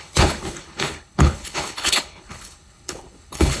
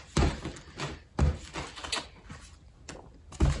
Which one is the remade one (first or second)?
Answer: first